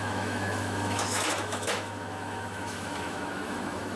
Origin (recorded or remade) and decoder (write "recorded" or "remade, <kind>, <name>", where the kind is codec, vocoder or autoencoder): remade, autoencoder, DAC-VAE